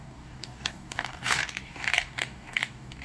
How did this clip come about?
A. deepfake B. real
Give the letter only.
A